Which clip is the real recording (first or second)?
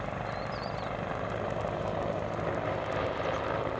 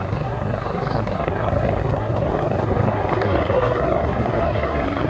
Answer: first